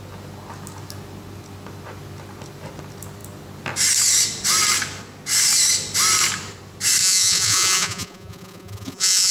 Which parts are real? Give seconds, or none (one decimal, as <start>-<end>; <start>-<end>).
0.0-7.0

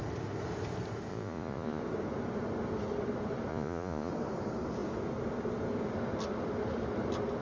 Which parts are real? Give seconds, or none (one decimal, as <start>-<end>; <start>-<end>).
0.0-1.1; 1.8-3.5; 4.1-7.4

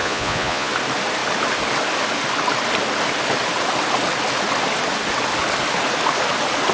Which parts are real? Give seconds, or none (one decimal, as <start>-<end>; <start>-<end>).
0.7-6.7

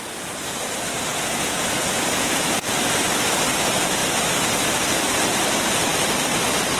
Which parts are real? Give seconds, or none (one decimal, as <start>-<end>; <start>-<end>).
0.0-1.1; 2.8-6.8

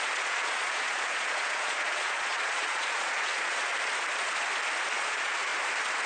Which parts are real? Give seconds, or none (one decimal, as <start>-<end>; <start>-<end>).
3.7-4.9; 5.5-6.1

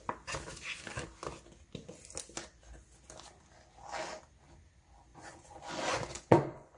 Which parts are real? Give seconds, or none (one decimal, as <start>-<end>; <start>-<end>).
0.0-5.1

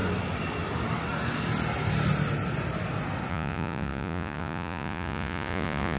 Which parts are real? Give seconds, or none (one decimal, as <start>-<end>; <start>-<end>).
0.0-3.3